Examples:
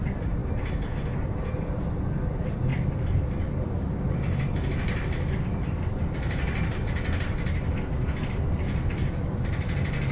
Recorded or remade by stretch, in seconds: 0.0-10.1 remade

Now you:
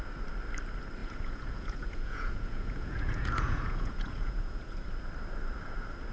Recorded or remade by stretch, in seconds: 0.0-1.0 recorded; 1.0-4.7 remade; 4.7-6.1 recorded

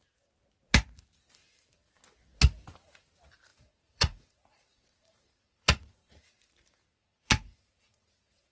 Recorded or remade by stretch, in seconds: 0.0-3.5 recorded; 3.5-6.4 remade; 6.4-7.0 recorded; 7.0-8.5 remade

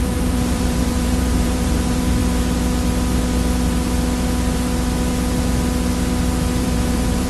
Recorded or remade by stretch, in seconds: 0.0-2.2 remade; 2.2-6.6 recorded; 6.6-7.3 remade

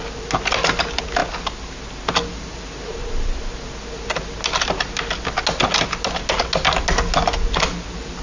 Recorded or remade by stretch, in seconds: 0.0-8.2 recorded

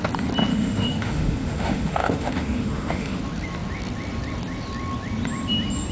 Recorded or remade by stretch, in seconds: 0.0-0.5 recorded; 0.5-3.2 remade; 3.2-5.9 recorded

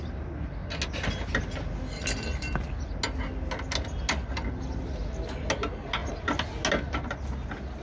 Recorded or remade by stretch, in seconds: 0.0-7.8 recorded